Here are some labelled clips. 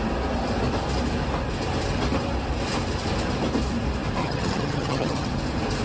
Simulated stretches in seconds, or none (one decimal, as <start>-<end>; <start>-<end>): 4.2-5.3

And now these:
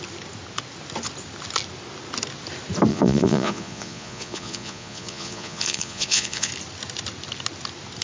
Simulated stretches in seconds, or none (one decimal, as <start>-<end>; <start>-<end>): 2.9-6.5

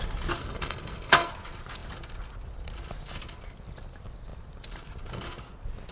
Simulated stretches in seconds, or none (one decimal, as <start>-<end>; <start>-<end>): 0.4-1.3